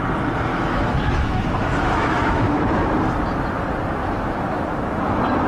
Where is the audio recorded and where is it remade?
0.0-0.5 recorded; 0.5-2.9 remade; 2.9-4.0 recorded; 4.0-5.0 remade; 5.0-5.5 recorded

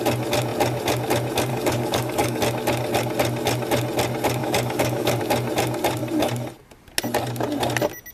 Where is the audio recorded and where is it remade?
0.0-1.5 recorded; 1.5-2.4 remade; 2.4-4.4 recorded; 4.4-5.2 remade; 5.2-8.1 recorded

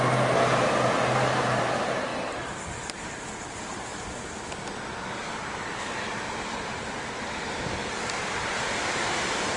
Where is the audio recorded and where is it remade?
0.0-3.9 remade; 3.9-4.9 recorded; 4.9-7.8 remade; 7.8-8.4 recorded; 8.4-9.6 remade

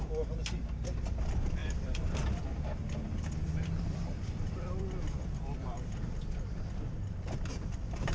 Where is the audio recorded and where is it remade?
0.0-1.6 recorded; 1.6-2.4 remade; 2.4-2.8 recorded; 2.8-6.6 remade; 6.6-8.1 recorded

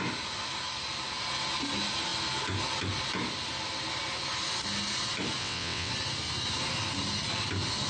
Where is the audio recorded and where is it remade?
0.0-5.4 recorded; 5.4-5.9 remade; 5.9-7.9 recorded

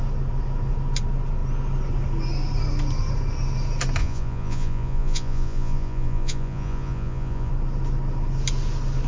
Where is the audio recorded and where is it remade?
0.0-4.0 recorded; 4.0-7.5 remade; 7.5-9.1 recorded

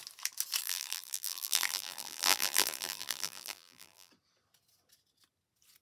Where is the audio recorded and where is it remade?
0.0-0.6 recorded; 0.6-4.1 remade; 4.1-5.8 recorded